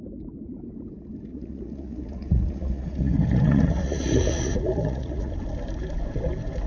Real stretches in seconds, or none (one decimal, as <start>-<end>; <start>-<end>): 0.0-1.3; 5.3-6.7